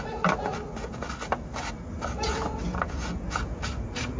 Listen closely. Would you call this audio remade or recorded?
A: recorded